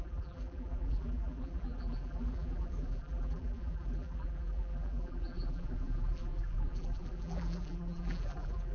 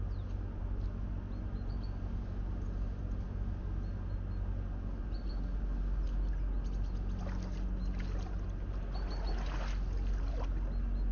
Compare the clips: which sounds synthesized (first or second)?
first